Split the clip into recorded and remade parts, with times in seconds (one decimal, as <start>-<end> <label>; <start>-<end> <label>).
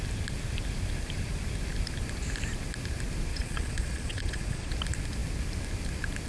0.0-3.3 recorded; 3.3-4.7 remade; 4.7-6.3 recorded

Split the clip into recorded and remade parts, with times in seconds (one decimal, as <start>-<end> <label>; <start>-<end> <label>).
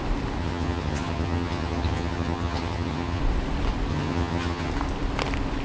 0.0-0.4 recorded; 0.4-3.2 remade; 3.2-3.9 recorded; 3.9-4.7 remade; 4.7-5.6 recorded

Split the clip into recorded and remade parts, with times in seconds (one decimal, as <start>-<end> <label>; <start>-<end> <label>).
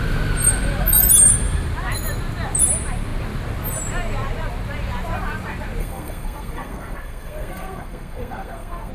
0.0-5.8 recorded; 5.8-8.9 remade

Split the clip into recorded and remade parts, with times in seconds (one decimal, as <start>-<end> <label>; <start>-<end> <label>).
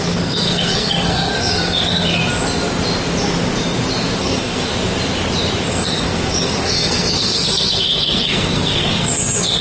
0.0-2.2 remade; 2.2-4.2 recorded; 4.2-4.7 remade; 4.7-5.7 recorded; 5.7-9.6 remade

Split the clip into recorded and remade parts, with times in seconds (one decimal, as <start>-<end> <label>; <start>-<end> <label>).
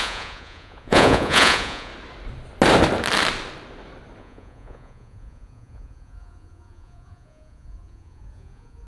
0.0-1.9 remade; 1.9-4.2 recorded; 4.2-8.9 remade